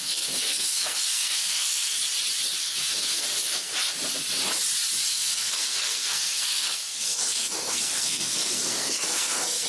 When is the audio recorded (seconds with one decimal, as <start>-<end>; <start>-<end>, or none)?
2.0-2.6; 3.7-5.1